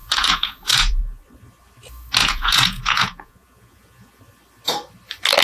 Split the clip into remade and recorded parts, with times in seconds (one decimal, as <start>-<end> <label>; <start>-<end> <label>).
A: 0.0-1.0 remade; 1.0-2.2 recorded; 2.2-4.2 remade; 4.2-5.4 recorded